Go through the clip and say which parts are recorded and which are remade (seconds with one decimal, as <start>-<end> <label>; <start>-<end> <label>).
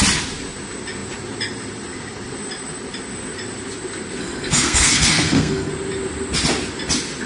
0.0-4.2 recorded; 4.2-5.7 remade; 5.7-7.3 recorded